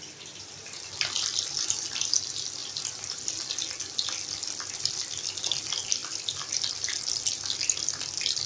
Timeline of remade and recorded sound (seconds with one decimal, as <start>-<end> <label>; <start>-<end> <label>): 0.0-8.5 recorded